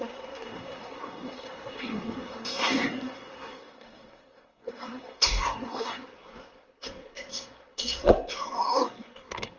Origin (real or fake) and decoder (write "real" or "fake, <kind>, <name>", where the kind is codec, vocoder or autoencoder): fake, codec, SNAC